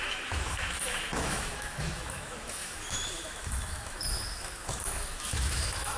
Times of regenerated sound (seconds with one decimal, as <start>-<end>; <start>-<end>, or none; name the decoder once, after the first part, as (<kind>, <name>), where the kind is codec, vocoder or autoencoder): 0.0-6.0 (autoencoder, DAC-VAE)